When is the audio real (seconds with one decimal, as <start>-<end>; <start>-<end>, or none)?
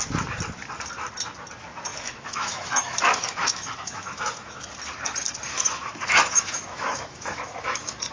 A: 0.0-1.9; 4.7-5.5